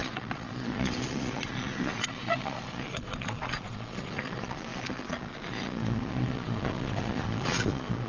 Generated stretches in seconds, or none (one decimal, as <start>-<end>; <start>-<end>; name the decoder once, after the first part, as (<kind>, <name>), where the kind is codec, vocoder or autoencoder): 0.0-8.1 (vocoder, Vocos)